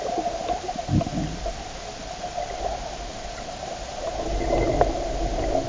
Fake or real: real